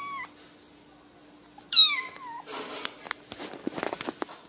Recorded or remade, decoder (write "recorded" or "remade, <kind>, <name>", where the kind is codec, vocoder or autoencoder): recorded